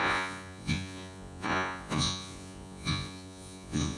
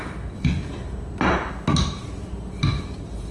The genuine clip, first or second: second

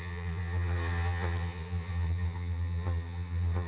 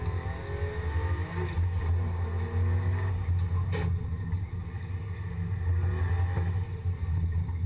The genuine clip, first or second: second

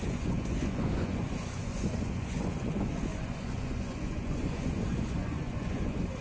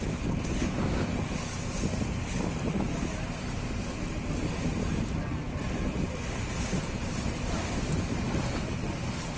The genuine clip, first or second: second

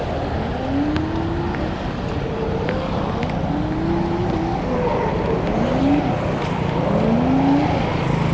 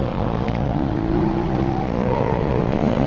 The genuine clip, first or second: first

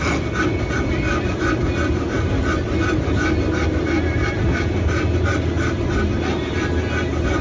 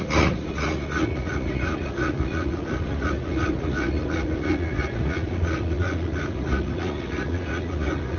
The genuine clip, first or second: first